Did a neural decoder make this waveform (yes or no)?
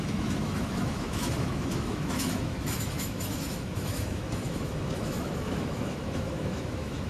yes